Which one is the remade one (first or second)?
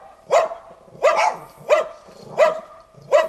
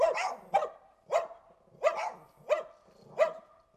first